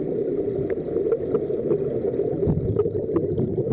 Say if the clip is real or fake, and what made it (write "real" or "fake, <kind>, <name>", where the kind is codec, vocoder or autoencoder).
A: real